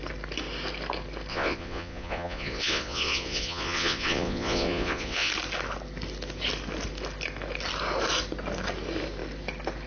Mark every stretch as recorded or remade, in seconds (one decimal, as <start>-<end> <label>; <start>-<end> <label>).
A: 0.0-1.3 recorded; 1.3-5.3 remade; 5.3-9.9 recorded